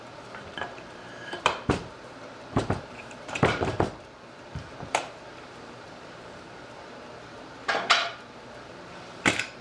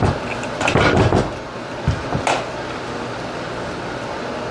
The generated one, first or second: first